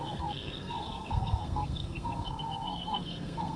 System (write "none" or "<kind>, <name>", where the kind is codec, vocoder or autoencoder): codec, SNAC